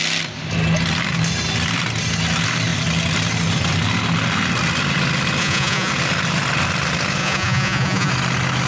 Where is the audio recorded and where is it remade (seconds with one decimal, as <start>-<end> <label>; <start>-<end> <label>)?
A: 0.0-5.4 recorded; 5.4-5.9 remade; 5.9-7.2 recorded; 7.2-8.1 remade; 8.1-8.7 recorded